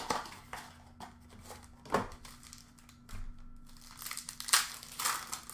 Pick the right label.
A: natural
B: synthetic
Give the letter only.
A